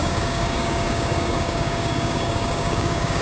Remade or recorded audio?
remade